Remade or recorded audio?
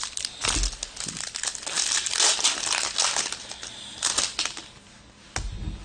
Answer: recorded